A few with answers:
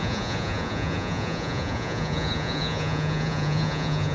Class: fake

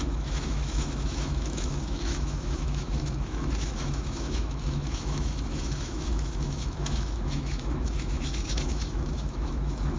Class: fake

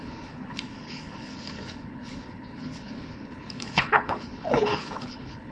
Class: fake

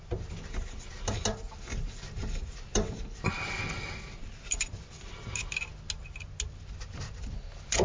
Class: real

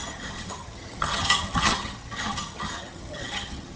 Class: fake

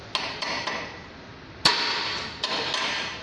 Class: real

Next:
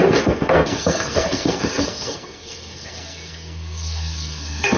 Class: fake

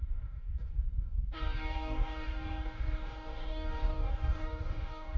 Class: fake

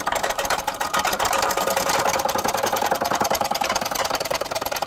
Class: fake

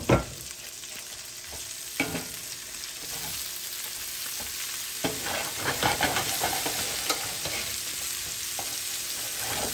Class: real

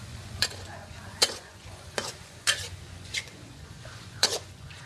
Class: fake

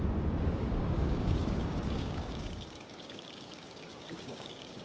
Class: fake